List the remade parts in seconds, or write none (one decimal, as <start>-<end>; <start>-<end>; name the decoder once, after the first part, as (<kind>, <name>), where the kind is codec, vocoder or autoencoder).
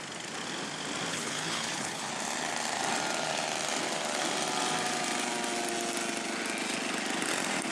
1.1-2.1 (codec, HILCodec)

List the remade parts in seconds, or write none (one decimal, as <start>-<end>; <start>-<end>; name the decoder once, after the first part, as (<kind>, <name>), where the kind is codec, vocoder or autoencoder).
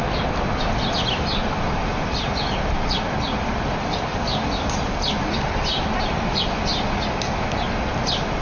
1.4-4.2 (vocoder, BigVGAN v2)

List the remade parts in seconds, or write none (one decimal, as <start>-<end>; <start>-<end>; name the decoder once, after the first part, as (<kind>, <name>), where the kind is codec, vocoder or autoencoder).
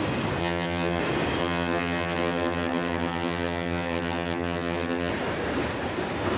0.4-1.0 (vocoder, HiFi-GAN); 1.4-5.1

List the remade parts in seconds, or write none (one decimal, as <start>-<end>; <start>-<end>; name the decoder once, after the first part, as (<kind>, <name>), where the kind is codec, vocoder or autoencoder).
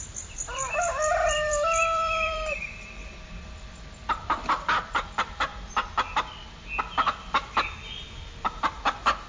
0.0-5.5 (vocoder, BigVGAN v2); 6.8-9.3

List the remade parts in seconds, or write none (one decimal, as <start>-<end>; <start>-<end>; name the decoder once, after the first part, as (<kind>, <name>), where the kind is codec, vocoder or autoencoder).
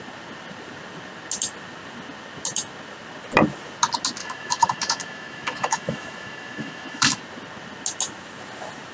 4.2-7.2 (autoencoder, DAC-VAE)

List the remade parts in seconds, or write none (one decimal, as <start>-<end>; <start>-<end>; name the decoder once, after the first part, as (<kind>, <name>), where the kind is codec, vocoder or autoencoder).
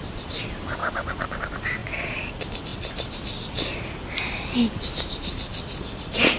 0.8-1.4 (vocoder, BigVGAN v2); 1.8-2.3; 2.7-4.3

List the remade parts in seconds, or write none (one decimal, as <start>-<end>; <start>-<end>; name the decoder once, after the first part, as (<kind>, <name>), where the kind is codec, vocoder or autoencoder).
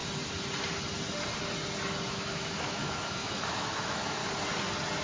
2.1-4.2 (autoencoder, DAC-VAE)